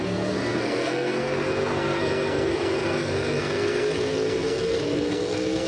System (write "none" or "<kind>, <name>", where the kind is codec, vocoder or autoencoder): codec, SNAC